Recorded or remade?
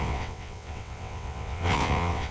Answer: remade